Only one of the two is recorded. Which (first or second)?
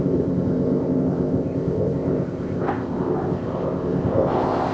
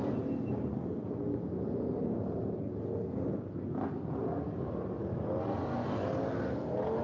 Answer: second